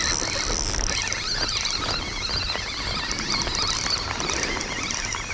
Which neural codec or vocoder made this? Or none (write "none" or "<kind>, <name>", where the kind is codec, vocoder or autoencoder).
none